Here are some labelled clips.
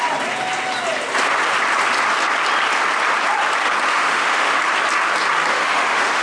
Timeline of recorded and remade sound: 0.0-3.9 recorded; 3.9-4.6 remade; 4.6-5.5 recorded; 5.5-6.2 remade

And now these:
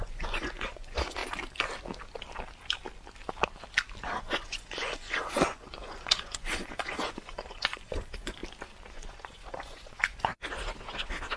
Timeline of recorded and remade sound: 0.0-1.2 remade; 1.2-4.2 recorded; 4.2-8.4 remade; 8.4-8.9 recorded; 8.9-10.3 remade; 10.3-11.4 recorded

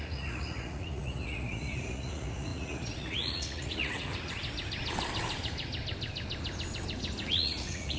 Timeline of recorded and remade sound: 0.0-4.4 remade; 4.4-7.3 recorded; 7.3-8.0 remade